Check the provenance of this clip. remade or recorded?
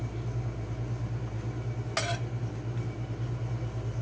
recorded